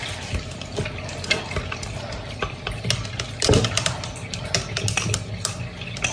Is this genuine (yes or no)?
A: yes